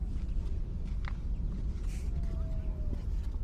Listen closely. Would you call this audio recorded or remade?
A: recorded